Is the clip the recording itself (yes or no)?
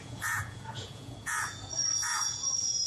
no